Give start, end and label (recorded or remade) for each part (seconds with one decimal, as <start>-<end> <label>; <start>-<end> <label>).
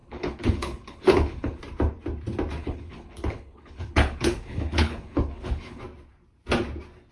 0.0-1.6 remade; 1.6-2.6 recorded; 2.6-5.8 remade; 5.8-7.1 recorded